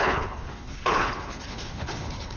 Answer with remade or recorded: remade